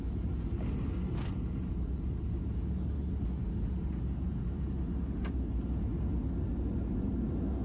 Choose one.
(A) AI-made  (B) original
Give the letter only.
B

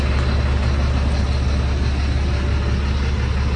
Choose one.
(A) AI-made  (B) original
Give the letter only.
B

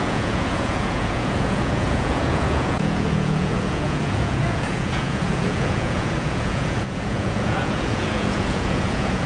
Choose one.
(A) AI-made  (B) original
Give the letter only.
A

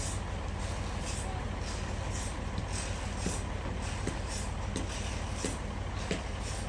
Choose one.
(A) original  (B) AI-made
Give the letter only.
A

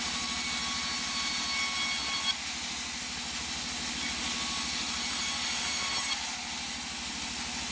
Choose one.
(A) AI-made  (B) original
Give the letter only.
B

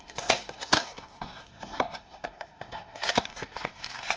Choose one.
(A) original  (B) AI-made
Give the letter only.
B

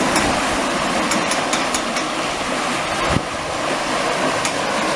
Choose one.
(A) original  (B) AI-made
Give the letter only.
A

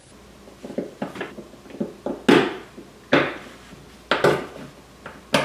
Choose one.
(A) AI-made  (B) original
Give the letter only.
B